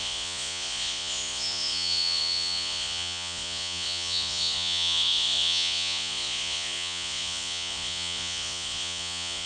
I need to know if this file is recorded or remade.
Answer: remade